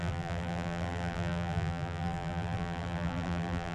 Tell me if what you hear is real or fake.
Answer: fake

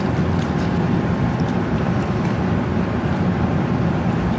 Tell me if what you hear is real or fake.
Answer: fake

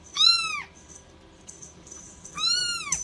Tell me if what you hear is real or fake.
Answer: real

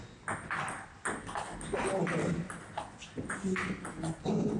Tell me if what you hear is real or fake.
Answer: real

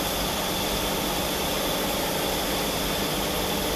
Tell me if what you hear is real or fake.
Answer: real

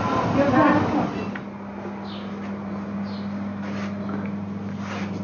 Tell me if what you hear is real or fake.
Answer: real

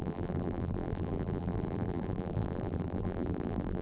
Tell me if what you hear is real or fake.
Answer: fake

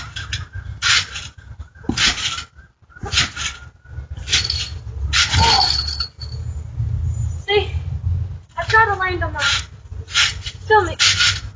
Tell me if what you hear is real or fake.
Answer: real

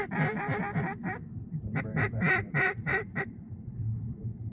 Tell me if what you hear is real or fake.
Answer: fake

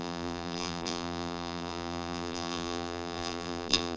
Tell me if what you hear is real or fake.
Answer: fake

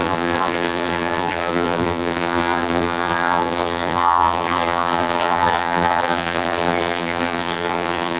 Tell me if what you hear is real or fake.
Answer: fake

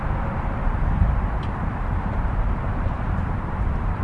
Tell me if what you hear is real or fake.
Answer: fake